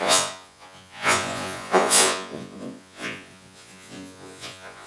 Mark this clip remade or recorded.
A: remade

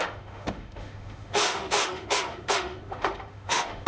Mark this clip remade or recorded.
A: remade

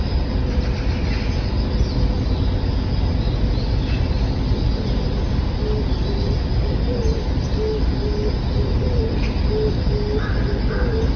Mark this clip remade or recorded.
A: recorded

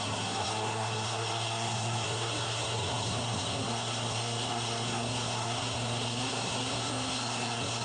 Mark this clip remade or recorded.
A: remade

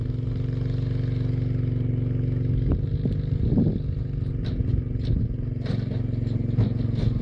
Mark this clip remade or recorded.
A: recorded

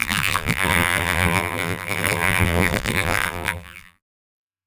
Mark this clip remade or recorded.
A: remade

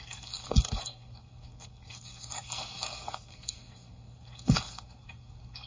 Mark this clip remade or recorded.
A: remade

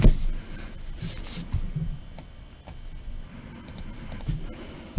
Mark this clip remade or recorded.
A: recorded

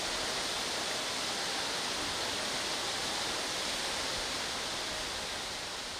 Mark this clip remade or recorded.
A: recorded